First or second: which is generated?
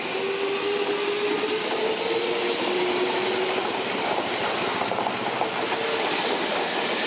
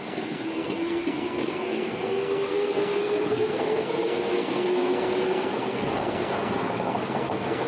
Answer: second